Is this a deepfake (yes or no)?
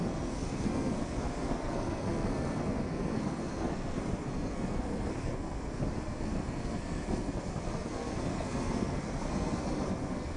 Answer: yes